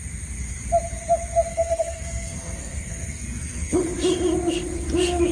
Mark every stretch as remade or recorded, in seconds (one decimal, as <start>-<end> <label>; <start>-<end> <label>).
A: 0.0-1.5 recorded; 1.5-3.8 remade; 3.8-5.3 recorded